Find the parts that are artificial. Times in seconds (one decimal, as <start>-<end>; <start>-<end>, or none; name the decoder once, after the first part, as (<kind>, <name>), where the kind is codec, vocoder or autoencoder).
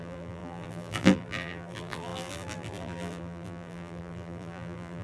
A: 0.0-5.0 (vocoder, BigVGAN v2)